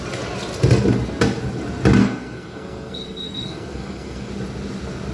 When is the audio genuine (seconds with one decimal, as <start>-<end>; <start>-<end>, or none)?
0.0-2.0; 4.3-5.1